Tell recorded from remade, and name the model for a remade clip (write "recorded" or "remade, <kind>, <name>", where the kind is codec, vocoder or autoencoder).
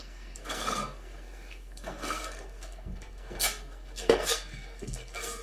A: remade, codec, SNAC